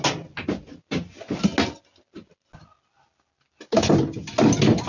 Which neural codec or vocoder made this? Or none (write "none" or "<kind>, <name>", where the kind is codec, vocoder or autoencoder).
none